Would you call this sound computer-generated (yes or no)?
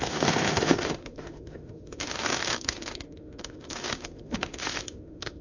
yes